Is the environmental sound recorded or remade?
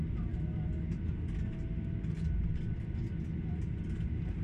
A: recorded